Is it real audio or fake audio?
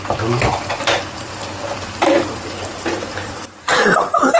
fake